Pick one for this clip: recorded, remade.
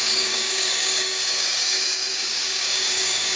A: remade